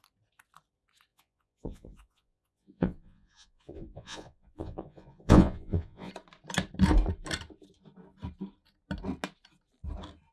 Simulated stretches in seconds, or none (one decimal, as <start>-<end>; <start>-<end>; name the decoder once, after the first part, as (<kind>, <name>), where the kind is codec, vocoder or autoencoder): 1.1-6.1 (vocoder, Vocos)